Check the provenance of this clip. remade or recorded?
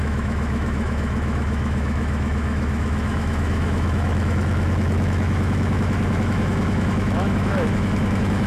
remade